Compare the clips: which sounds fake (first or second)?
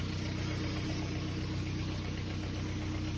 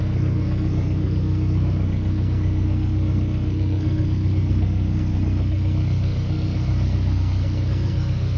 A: second